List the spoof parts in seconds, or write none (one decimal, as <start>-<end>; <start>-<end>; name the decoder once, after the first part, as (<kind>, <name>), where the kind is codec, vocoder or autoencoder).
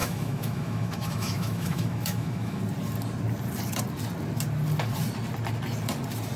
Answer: 0.0-2.6 (autoencoder, DAC-VAE)